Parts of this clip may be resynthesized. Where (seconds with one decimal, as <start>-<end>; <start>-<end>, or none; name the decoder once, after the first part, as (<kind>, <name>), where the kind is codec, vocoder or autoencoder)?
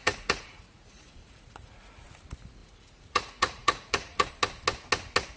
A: 0.0-2.0 (vocoder, Vocos); 2.6-4.3